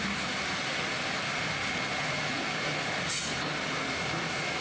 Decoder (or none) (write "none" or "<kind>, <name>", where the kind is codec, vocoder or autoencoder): none